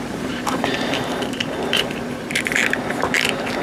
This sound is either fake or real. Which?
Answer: fake